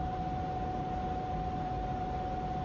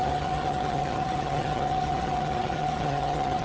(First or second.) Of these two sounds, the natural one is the first